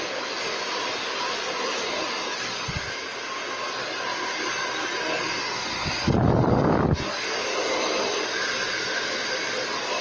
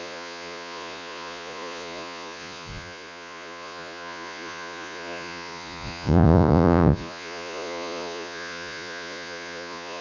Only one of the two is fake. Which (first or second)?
second